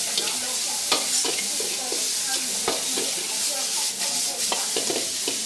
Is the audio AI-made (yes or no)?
no